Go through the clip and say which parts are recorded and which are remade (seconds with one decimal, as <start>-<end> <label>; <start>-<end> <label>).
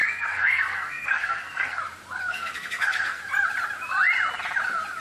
0.0-1.8 remade; 1.8-2.3 recorded; 2.3-3.2 remade; 3.2-5.0 recorded